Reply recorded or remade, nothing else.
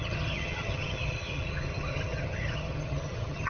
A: remade